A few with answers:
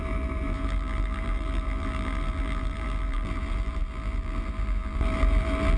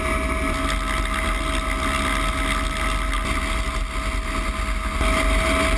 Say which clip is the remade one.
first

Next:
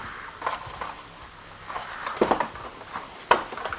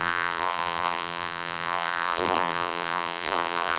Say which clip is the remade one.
second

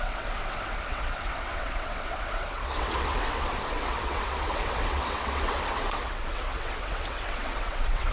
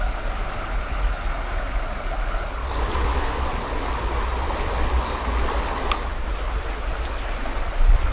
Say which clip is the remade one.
first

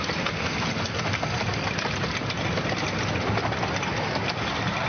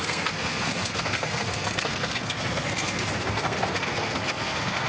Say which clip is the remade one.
second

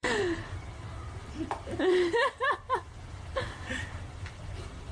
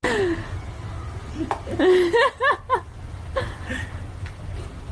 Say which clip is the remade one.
first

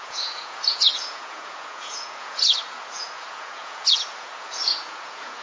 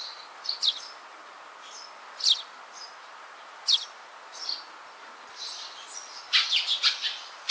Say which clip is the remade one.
first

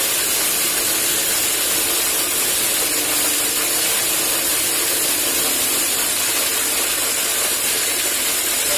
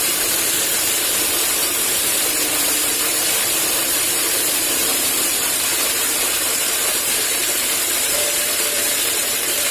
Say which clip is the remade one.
second